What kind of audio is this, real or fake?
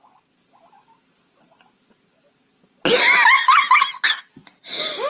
real